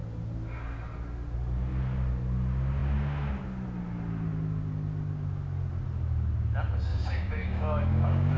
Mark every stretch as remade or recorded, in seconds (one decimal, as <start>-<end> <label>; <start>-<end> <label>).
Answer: 0.0-6.9 recorded; 6.9-8.4 remade